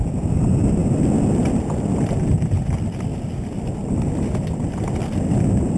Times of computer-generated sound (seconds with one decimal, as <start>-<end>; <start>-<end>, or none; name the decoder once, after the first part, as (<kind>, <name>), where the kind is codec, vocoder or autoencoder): none